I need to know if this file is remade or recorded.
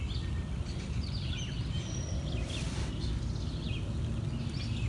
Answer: recorded